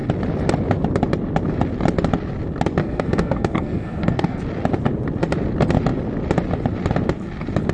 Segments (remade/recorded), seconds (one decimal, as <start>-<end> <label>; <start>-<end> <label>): 0.0-2.8 recorded; 2.8-4.4 remade; 4.4-7.7 recorded